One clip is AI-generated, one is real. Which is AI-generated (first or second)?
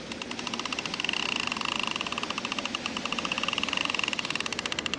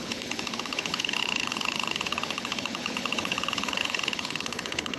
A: second